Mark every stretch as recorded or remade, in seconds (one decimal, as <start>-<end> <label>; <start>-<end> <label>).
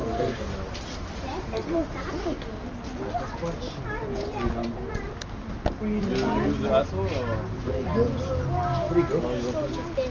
0.0-0.5 remade; 0.5-10.1 recorded